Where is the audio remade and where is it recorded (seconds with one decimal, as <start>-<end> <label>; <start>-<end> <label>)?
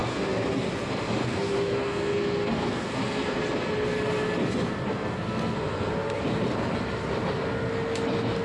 0.0-0.7 remade; 0.7-1.2 recorded; 1.2-3.4 remade; 3.4-4.9 recorded; 4.9-5.9 remade; 5.9-8.4 recorded